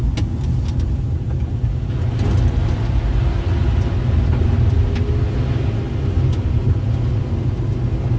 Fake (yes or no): no